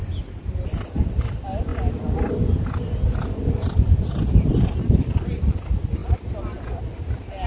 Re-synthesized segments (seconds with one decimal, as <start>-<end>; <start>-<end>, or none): none